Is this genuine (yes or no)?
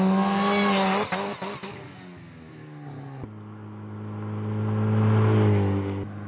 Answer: yes